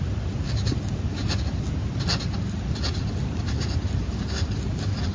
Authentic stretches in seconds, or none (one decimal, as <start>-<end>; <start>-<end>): 0.0-5.1